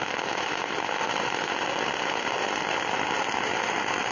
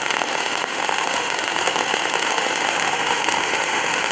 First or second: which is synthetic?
second